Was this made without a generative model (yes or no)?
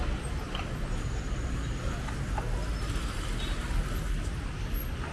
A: yes